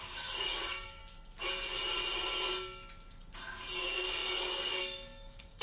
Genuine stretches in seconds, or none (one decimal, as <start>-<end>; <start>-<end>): 1.0-3.8